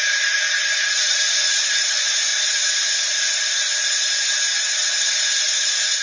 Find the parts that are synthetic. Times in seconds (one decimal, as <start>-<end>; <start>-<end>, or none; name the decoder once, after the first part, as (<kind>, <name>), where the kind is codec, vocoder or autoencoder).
0.0-2.3 (vocoder, BigVGAN v2); 3.8-6.0